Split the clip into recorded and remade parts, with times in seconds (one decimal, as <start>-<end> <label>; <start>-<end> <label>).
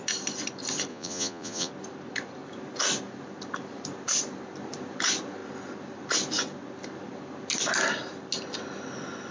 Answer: 0.0-0.9 recorded; 0.9-1.7 remade; 1.7-9.3 recorded